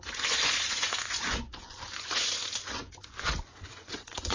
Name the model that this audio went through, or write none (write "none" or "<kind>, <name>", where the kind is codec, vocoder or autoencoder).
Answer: vocoder, Vocos